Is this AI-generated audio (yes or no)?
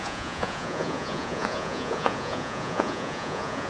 yes